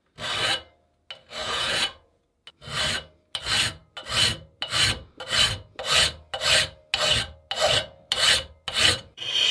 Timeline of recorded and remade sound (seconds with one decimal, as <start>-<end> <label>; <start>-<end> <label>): 0.0-1.4 recorded; 1.4-2.2 remade; 2.2-9.5 recorded